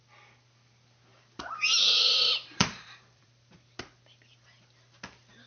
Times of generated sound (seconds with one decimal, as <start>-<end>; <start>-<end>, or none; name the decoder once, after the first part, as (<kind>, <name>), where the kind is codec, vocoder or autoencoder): 1.1-3.3 (vocoder, BigVGAN v2)